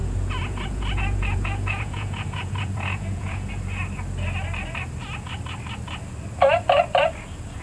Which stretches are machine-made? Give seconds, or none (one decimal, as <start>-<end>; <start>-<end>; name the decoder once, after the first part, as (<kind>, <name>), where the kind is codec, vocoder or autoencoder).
0.0-3.5 (vocoder, Vocos)